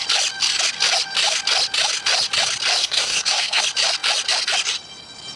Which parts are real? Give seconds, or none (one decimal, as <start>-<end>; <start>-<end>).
0.0-2.8; 3.6-5.4